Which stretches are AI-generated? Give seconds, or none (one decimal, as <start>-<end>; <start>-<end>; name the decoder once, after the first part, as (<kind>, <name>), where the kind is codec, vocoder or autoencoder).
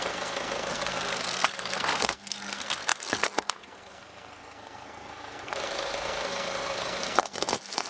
0.0-7.9 (codec, SNAC)